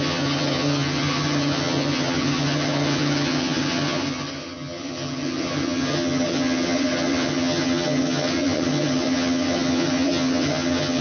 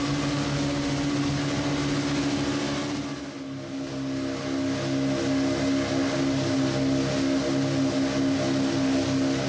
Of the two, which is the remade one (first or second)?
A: first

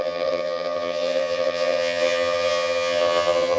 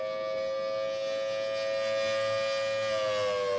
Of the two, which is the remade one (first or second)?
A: first